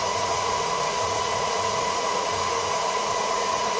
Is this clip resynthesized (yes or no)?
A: yes